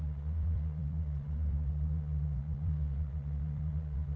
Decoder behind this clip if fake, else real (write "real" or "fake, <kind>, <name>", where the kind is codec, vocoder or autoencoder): fake, vocoder, WaveNeXt